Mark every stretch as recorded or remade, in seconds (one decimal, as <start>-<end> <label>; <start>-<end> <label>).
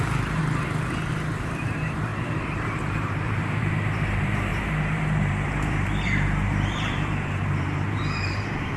0.0-0.4 remade; 0.4-1.1 recorded; 1.1-8.8 remade